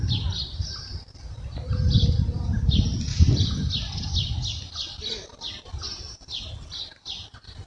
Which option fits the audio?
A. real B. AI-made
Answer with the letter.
A